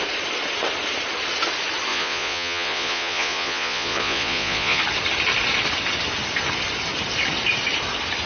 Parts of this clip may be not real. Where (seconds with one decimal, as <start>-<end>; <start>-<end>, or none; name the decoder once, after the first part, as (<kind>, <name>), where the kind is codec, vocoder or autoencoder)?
1.9-4.8 (vocoder, Vocos)